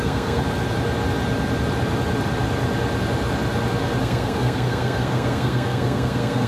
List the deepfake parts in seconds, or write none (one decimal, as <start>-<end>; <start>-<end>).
0.0-0.4; 4.0-6.5